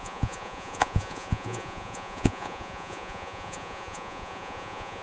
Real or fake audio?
fake